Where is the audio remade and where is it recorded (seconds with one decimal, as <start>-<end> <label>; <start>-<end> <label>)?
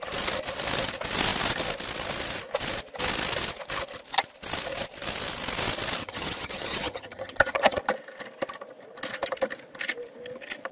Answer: 0.0-6.0 recorded; 6.0-7.8 remade; 7.8-10.7 recorded